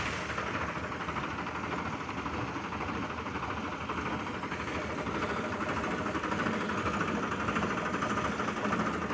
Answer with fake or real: real